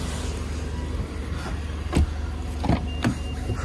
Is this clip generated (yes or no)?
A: no